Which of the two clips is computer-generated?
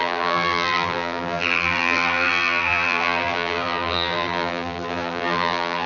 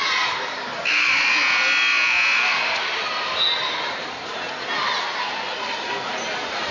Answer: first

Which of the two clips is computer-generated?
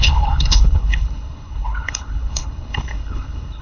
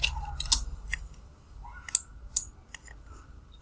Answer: first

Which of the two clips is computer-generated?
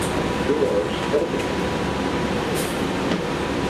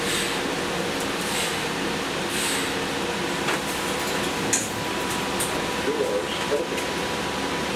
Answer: first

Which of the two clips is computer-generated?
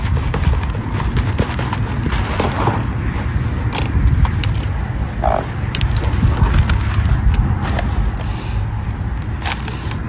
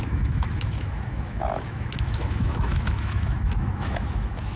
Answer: second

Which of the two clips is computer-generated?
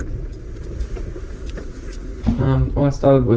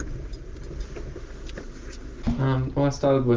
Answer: first